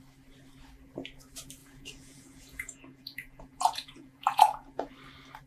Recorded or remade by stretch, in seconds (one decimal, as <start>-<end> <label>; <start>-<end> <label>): 0.0-1.6 recorded; 1.6-4.9 remade; 4.9-5.5 recorded